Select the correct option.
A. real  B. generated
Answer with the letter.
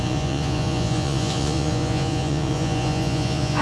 B